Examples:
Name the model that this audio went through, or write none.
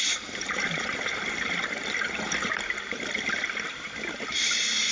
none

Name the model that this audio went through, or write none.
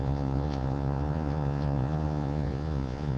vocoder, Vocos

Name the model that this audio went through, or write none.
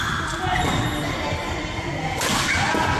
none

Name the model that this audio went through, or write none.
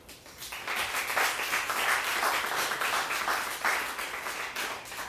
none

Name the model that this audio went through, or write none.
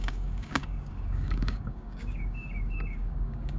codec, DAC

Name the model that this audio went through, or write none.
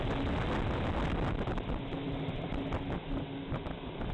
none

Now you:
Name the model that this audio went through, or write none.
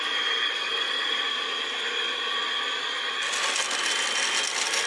none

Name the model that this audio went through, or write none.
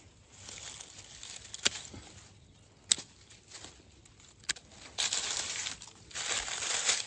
none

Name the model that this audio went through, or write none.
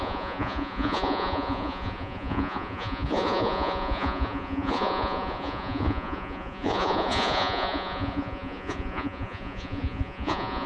vocoder, Vocos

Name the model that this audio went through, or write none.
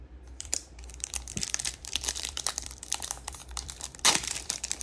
vocoder, BigVGAN v2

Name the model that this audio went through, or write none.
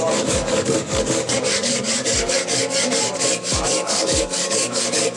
codec, DAC